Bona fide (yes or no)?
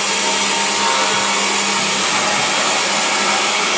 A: yes